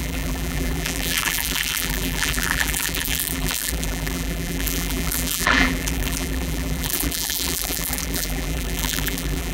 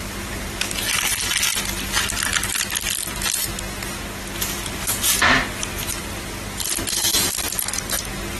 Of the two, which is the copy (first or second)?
first